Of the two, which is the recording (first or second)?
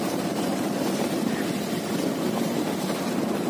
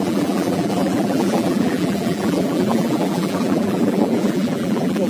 first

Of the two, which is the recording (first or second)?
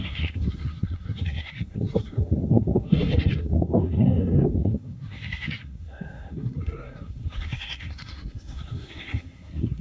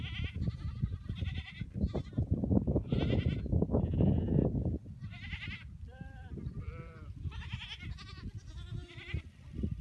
second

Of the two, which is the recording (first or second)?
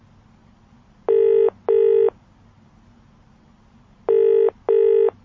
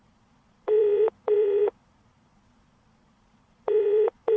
first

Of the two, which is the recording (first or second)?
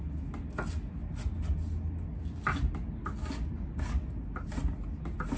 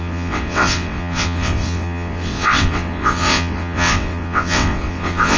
first